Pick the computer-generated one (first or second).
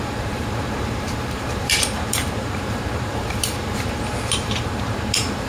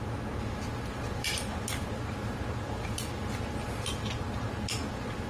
first